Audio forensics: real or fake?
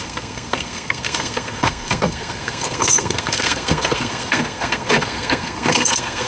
fake